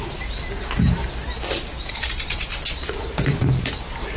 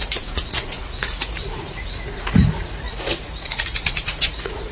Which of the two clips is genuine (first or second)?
first